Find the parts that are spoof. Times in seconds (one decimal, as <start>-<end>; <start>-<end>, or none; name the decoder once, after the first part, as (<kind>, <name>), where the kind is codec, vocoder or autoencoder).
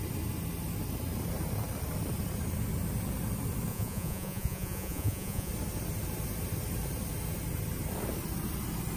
3.7-5.5 (vocoder, Vocos)